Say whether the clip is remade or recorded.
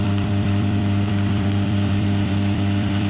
remade